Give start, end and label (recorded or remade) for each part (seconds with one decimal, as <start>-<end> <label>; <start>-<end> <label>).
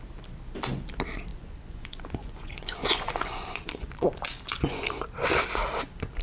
0.0-1.3 recorded; 1.3-5.0 remade; 5.0-6.2 recorded